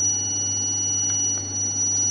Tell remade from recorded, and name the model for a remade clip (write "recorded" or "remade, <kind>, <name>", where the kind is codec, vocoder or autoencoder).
recorded